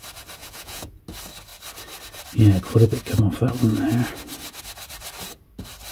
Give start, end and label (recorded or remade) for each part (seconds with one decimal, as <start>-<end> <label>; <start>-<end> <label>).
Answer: 0.0-0.4 recorded; 0.4-1.0 remade; 1.0-5.9 recorded